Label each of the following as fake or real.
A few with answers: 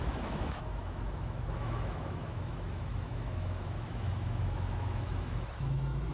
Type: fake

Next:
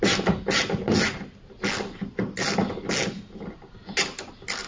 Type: real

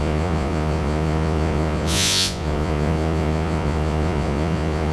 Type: fake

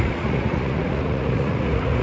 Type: fake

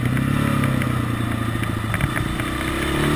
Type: real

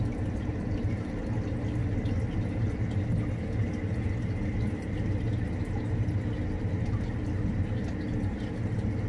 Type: real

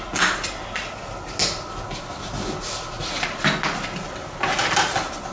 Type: real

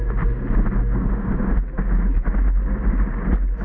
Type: real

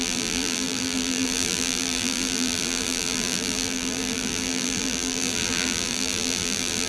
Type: fake